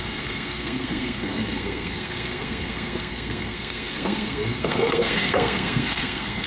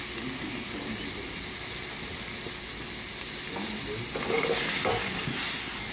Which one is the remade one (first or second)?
first